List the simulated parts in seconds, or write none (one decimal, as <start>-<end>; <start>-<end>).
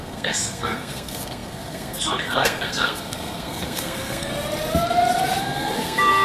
0.0-4.3; 5.4-6.2